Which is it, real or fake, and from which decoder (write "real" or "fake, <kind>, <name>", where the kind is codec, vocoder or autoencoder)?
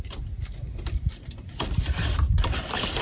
real